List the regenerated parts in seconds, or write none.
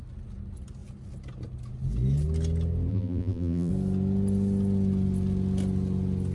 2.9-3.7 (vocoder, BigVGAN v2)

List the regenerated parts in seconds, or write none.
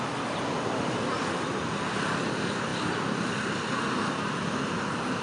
0.0-2.7 (vocoder, BigVGAN v2); 4.1-5.2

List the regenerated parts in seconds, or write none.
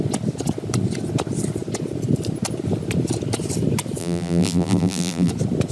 4.0-5.3 (vocoder, BigVGAN v2)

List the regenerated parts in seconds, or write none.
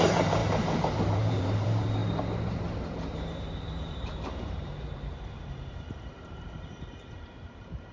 0.0-7.9 (vocoder, BigVGAN v2)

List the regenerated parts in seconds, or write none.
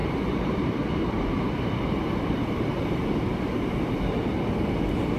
0.0-1.5 (vocoder, BigVGAN v2); 2.0-4.0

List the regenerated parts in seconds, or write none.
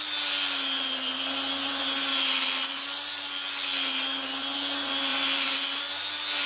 5.1-5.8 (vocoder, BigVGAN v2)